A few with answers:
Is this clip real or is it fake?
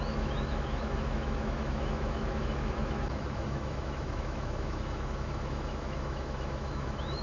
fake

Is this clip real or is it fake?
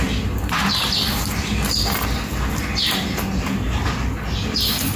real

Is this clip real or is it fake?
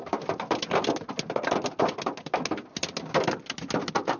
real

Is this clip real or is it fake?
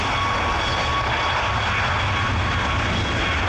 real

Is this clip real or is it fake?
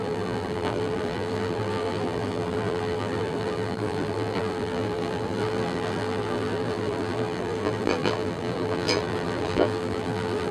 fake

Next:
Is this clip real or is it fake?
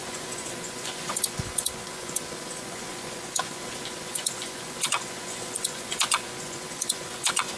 fake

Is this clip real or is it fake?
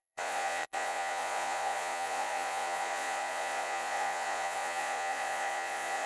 fake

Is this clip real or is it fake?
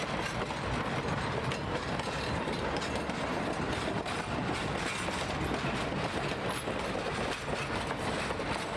real